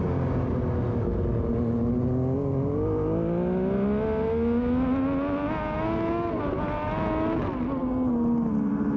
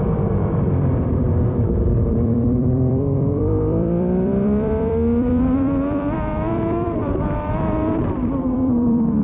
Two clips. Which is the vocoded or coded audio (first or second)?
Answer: second